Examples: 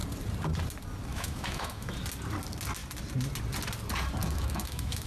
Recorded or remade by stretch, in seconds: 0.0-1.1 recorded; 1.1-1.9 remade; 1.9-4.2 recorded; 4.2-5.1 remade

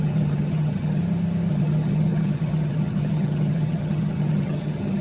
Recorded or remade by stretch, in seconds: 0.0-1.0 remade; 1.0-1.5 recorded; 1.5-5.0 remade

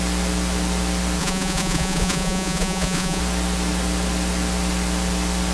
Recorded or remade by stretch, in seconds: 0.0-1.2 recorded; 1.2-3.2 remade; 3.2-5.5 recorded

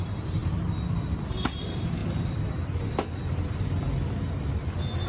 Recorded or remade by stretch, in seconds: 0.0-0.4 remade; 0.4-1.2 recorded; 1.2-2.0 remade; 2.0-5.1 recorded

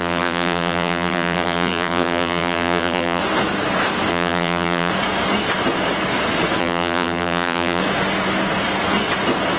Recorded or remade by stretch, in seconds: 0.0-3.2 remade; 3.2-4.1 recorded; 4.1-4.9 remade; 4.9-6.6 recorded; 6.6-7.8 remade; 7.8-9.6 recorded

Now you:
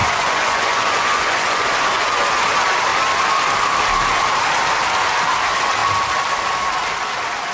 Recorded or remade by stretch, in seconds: 0.0-2.3 remade; 2.3-7.5 recorded

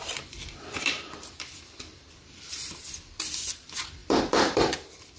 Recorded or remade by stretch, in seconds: 0.0-5.2 remade

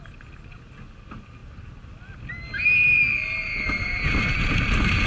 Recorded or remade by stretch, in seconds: 0.0-5.1 recorded